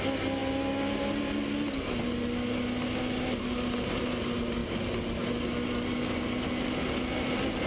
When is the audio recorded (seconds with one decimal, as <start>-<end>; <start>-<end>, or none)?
0.0-4.6; 5.2-7.7